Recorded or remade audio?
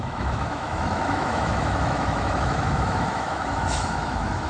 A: remade